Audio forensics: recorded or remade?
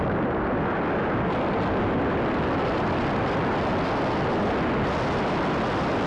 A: recorded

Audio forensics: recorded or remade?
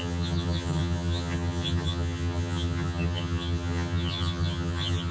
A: remade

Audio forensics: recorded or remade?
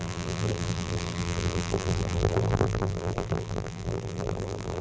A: remade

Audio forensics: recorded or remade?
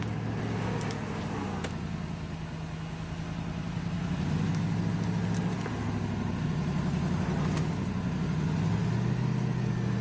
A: recorded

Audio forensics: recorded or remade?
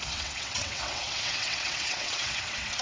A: remade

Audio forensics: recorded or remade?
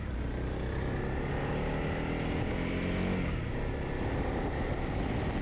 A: recorded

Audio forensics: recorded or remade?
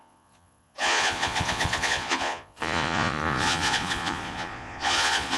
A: remade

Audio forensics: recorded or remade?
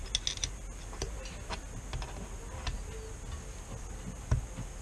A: recorded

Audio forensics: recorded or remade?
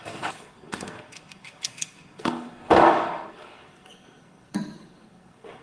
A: remade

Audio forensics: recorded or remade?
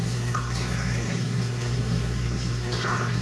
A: remade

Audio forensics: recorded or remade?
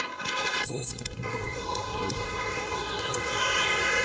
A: remade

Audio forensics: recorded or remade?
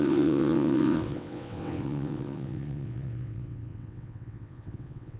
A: remade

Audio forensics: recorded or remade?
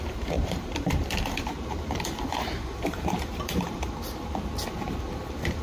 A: remade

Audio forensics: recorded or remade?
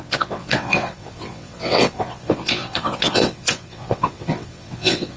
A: remade